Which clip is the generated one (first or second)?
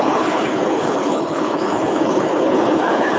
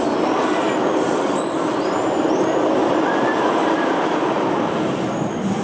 first